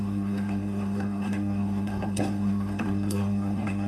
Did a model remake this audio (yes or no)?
yes